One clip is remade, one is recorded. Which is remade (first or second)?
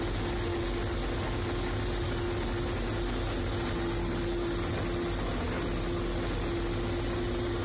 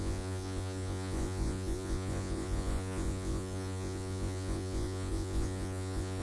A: second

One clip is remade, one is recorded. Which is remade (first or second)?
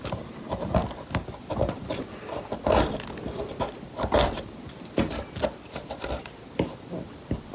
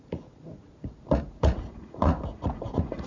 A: second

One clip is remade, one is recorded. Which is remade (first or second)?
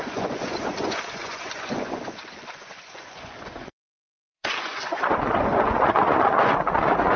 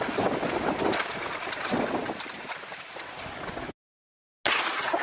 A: first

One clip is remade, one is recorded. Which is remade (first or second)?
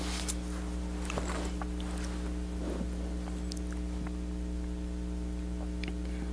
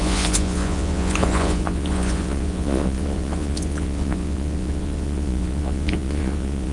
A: second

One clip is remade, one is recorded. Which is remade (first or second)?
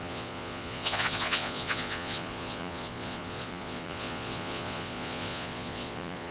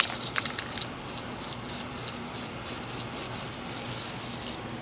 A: first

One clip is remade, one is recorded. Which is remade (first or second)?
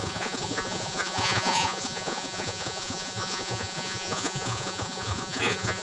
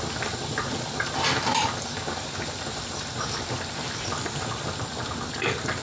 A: first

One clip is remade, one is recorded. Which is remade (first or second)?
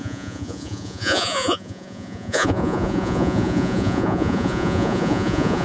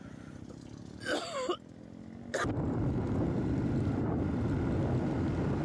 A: first